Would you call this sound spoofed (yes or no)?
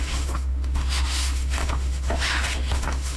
yes